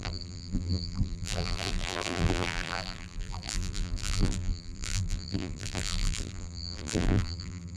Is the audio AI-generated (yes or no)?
yes